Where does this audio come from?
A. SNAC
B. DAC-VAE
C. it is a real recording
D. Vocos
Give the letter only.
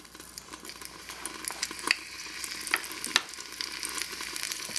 C